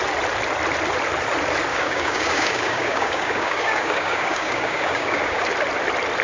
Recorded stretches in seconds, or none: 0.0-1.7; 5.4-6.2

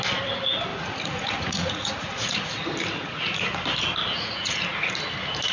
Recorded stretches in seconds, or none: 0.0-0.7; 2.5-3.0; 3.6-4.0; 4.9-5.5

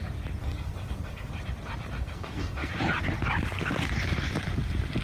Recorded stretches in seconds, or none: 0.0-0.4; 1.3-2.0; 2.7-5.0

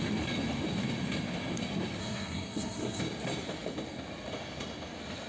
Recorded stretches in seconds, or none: 0.0-2.0; 3.0-5.3

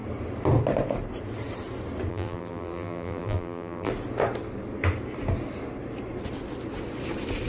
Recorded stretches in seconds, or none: 0.0-2.1; 3.9-7.5

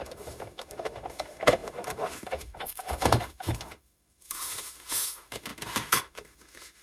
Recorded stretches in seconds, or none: none